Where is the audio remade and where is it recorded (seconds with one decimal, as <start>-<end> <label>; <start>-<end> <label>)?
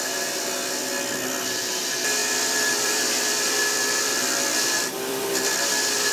0.0-2.2 recorded; 2.2-6.1 remade